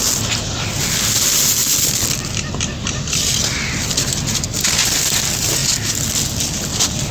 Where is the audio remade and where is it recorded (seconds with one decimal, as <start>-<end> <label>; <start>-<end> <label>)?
0.0-7.1 recorded